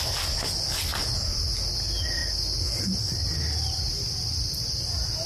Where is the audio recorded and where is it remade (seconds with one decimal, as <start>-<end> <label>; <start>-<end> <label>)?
0.0-5.3 recorded